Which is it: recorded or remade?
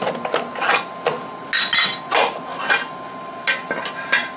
recorded